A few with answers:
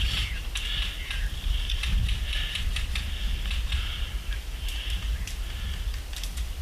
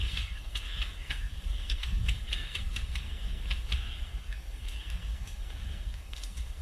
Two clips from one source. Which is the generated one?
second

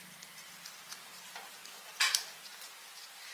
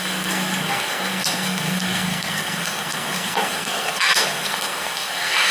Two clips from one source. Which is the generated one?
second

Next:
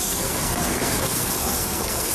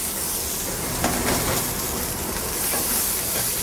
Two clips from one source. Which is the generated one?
first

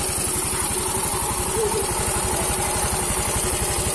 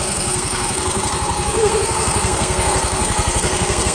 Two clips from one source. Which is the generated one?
second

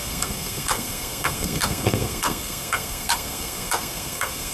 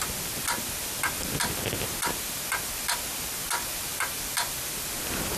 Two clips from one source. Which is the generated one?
first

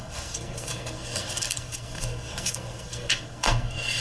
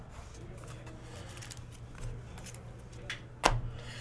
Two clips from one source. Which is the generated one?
first